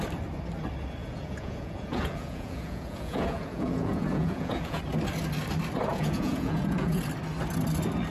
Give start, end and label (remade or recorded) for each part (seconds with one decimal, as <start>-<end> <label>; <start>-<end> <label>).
0.0-1.0 recorded; 1.0-4.8 remade; 4.8-5.9 recorded; 5.9-7.0 remade; 7.0-8.1 recorded